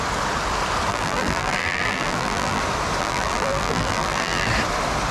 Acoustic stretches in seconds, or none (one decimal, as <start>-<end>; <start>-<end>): 0.0-0.9; 2.6-3.0; 4.5-5.1